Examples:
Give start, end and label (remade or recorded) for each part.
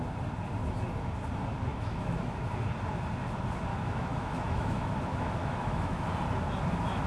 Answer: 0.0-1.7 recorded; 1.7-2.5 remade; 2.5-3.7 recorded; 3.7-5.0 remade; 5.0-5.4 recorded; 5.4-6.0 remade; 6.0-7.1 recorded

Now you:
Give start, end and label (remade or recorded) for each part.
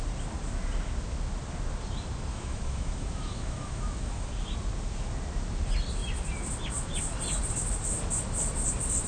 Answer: 0.0-2.3 recorded; 2.3-4.3 remade; 4.3-9.1 recorded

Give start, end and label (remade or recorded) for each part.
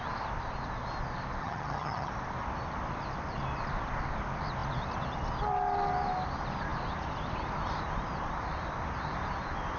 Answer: 0.0-1.4 recorded; 1.4-2.1 remade; 2.1-9.8 recorded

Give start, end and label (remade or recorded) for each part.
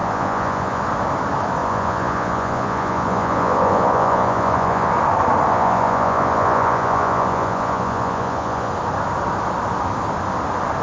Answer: 0.0-0.8 remade; 0.8-1.6 recorded; 1.6-4.9 remade; 4.9-5.5 recorded; 5.5-8.7 remade; 8.7-10.8 recorded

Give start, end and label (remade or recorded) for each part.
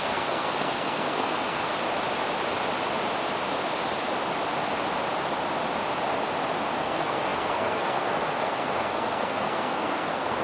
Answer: 0.0-1.7 remade; 1.7-6.8 recorded; 6.8-10.4 remade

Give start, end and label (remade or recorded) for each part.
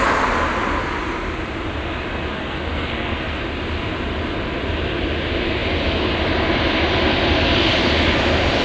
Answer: 0.0-2.3 recorded; 2.3-3.4 remade; 3.4-8.6 recorded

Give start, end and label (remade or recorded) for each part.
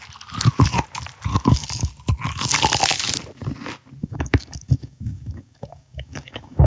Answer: 0.0-1.3 recorded; 1.3-1.9 remade; 1.9-4.0 recorded; 4.0-6.7 remade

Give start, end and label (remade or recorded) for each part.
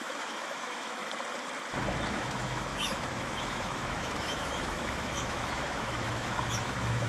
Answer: 0.0-1.0 remade; 1.0-2.1 recorded; 2.1-7.1 remade